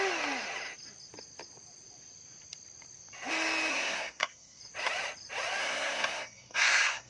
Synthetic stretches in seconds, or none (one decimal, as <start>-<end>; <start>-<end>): 3.7-4.6; 5.6-7.1